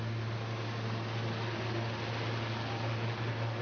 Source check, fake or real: real